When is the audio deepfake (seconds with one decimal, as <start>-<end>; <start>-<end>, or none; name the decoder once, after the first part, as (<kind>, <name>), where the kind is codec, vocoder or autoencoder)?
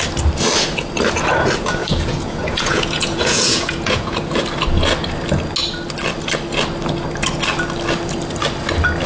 1.8-4.2 (vocoder, Vocos)